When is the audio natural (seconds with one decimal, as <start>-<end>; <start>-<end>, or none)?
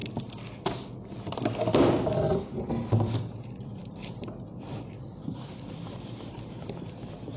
0.0-2.7